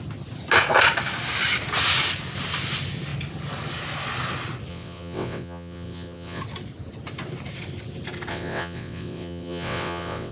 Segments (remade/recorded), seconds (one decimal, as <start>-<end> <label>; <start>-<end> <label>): 0.0-4.7 recorded; 4.7-6.4 remade; 6.4-8.3 recorded; 8.3-10.3 remade

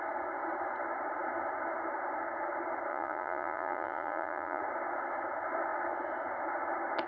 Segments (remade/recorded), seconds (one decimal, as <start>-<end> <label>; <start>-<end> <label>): 0.0-2.9 recorded; 2.9-4.6 remade; 4.6-7.1 recorded

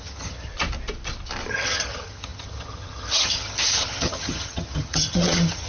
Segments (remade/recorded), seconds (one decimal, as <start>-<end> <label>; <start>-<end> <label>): 0.0-0.5 remade; 0.5-1.5 recorded; 1.5-5.7 remade

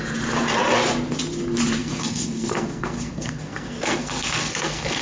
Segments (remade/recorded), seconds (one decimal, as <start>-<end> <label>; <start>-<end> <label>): 0.0-1.8 recorded; 1.8-5.0 remade

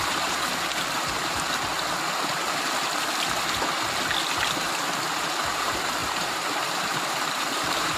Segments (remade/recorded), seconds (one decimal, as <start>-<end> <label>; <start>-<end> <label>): 0.0-1.7 remade; 1.7-5.5 recorded; 5.5-8.0 remade

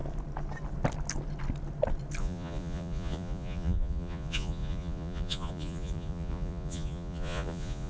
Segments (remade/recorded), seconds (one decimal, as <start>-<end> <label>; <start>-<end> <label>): 0.0-2.2 recorded; 2.2-7.9 remade

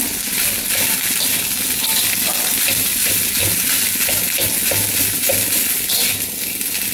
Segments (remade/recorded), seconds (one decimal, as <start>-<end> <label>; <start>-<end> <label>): 0.0-6.9 recorded

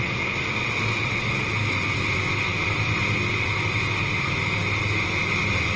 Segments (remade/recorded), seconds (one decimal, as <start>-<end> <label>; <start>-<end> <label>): 0.0-5.8 recorded